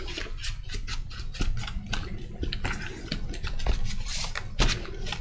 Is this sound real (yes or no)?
no